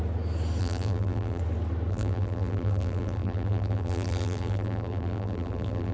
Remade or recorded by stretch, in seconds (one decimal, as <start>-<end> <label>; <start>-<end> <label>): 0.0-0.6 recorded; 0.6-1.4 remade; 1.4-1.9 recorded; 1.9-5.9 remade